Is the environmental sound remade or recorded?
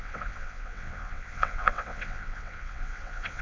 remade